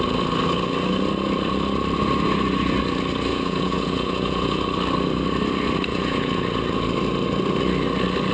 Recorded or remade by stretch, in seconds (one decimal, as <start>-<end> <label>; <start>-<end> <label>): 0.0-3.3 recorded; 3.3-4.6 remade; 4.6-5.9 recorded; 5.9-6.4 remade; 6.4-8.3 recorded